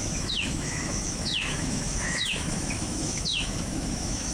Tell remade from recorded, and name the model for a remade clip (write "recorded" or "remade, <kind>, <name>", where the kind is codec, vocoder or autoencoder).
remade, autoencoder, DAC-VAE